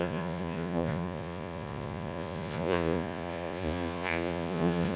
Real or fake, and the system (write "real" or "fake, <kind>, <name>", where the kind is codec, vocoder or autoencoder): fake, vocoder, Vocos